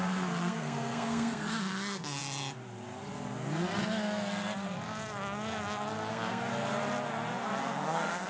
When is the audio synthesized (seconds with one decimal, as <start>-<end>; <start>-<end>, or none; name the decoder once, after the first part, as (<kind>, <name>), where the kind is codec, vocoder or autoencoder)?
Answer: 0.0-2.2 (codec, SNAC); 6.1-6.5; 7.6-8.3